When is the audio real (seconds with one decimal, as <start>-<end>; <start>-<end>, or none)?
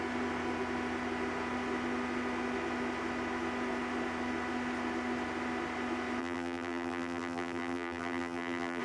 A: 0.0-6.2